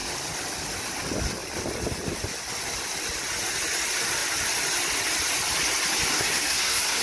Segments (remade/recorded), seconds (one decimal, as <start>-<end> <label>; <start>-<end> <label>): 0.0-6.1 recorded; 6.1-7.0 remade